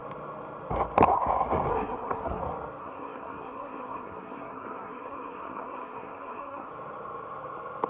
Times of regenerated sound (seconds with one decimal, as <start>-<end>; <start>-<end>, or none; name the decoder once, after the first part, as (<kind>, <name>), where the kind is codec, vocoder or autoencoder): 1.7-2.4 (codec, SNAC); 2.8-6.7